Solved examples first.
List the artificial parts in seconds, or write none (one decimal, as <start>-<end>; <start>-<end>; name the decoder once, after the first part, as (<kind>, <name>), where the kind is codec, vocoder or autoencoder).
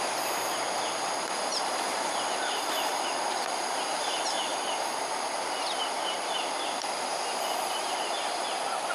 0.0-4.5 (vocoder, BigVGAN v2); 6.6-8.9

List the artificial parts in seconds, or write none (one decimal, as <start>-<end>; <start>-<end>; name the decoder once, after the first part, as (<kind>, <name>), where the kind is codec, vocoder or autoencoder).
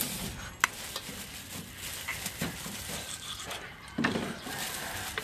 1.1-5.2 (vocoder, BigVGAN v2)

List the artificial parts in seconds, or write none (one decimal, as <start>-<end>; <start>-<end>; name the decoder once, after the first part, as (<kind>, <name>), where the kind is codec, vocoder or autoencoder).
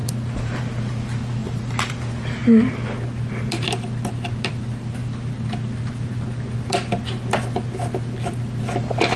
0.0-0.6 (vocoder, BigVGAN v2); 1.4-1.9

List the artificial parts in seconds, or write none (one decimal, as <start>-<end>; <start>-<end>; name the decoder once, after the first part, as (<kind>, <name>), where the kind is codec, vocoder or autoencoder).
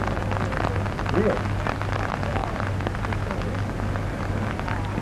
2.4-3.0 (vocoder, BigVGAN v2)